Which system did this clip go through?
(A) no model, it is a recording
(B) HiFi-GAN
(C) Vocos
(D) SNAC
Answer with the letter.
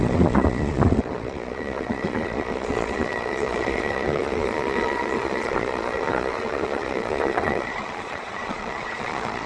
C